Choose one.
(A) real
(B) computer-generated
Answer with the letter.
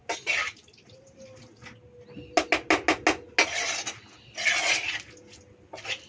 A